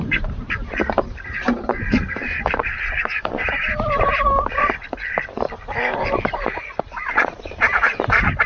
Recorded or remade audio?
remade